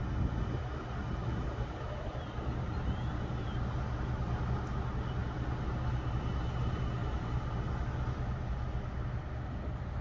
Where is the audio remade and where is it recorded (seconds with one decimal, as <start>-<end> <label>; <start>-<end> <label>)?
0.0-1.2 recorded; 1.2-3.8 remade; 3.8-7.0 recorded; 7.0-7.6 remade; 7.6-10.0 recorded

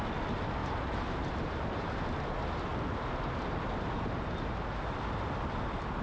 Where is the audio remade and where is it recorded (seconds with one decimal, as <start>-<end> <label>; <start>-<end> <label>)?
0.0-0.6 recorded; 0.6-1.9 remade; 1.9-6.0 recorded

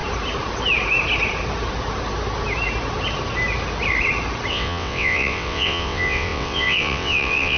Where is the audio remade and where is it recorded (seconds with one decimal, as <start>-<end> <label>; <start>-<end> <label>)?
0.0-4.5 recorded; 4.5-7.6 remade

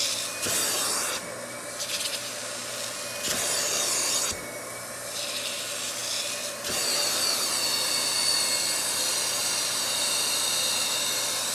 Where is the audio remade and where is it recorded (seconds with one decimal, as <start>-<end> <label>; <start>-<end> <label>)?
0.0-11.5 recorded

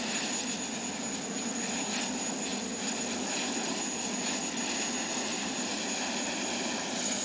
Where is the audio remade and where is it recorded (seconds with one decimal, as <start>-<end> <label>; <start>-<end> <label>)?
0.0-7.2 recorded

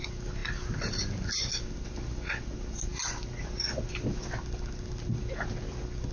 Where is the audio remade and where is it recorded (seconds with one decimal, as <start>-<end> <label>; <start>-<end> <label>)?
0.0-6.1 recorded

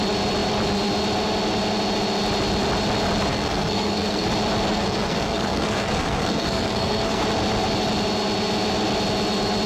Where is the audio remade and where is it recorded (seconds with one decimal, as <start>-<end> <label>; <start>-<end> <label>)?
0.0-3.3 recorded; 3.3-4.3 remade; 4.3-4.7 recorded; 4.7-7.2 remade; 7.2-9.7 recorded